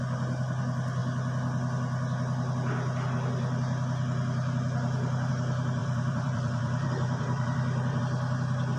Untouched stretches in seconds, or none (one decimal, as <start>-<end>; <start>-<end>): 0.0-5.8; 8.0-8.8